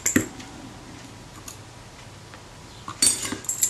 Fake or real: real